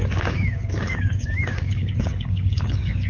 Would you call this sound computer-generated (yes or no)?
yes